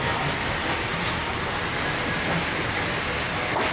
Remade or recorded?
recorded